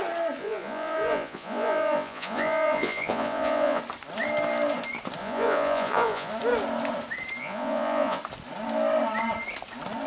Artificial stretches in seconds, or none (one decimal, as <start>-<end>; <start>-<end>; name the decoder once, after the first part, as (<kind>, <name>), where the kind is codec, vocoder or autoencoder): 0.4-3.8 (vocoder, Vocos); 5.2-6.3; 7.4-8.2